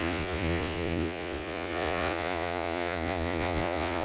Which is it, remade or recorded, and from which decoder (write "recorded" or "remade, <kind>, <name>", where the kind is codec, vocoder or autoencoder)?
remade, vocoder, Vocos